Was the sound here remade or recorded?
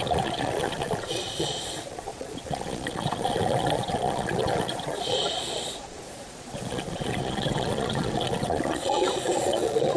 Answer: remade